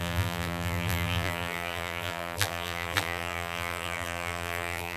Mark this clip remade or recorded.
remade